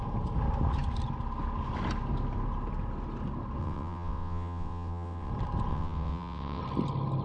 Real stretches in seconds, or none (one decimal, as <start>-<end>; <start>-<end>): 0.0-3.6; 5.3-5.7; 6.6-7.2